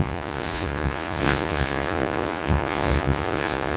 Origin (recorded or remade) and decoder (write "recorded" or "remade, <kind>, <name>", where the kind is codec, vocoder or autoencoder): remade, vocoder, Vocos